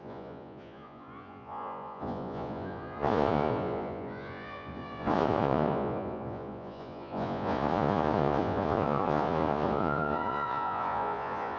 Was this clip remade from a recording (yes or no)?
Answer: yes